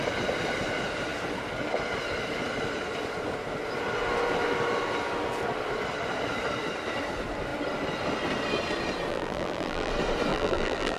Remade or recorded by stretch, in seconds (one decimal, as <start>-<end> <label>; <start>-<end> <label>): 0.0-9.1 recorded; 9.1-9.9 remade; 9.9-10.3 recorded; 10.3-11.0 remade